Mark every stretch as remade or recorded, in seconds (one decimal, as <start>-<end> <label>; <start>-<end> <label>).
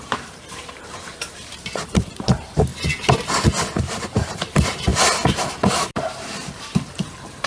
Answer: 0.0-2.7 remade; 2.7-4.0 recorded; 4.0-7.5 remade